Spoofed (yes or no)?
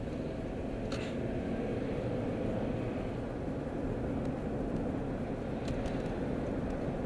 no